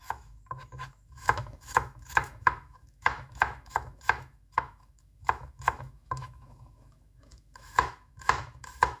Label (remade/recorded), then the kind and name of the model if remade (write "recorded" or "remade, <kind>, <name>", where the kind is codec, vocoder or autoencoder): remade, autoencoder, DAC-VAE